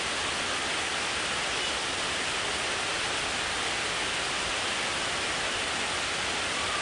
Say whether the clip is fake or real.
real